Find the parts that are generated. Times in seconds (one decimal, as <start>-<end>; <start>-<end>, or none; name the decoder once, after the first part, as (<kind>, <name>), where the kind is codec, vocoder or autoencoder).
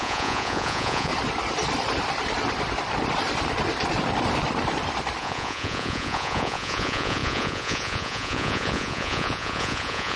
0.0-1.1 (vocoder, Vocos); 5.2-10.2